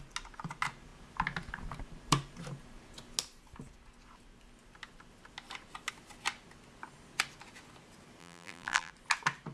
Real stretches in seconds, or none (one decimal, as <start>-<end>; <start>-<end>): 0.0-8.2; 8.9-9.5